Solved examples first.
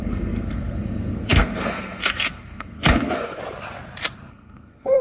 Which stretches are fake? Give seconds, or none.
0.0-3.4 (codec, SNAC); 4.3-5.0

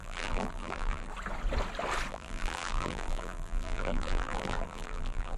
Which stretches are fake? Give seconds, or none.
0.0-1.1 (vocoder, BigVGAN v2); 2.1-5.4

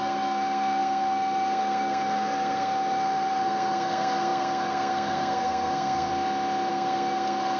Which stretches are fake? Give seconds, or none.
0.0-6.1 (codec, SNAC); 6.7-7.6

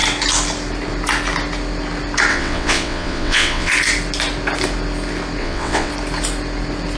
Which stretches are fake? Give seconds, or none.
2.3-3.7 (vocoder, WaveNeXt); 5.4-5.9

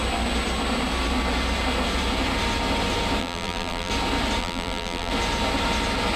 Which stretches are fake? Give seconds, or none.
3.2-3.9 (vocoder, BigVGAN v2); 4.4-5.1

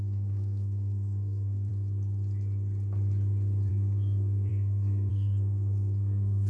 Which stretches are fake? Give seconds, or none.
0.0-1.7 (codec, SNAC); 3.7-6.5

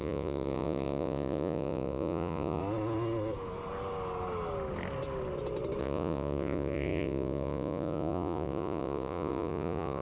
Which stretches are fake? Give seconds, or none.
0.0-2.6 (vocoder, Vocos); 5.8-10.0

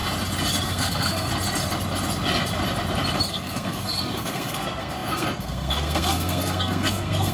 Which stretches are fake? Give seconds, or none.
0.6-1.3 (codec, SNAC); 3.3-7.3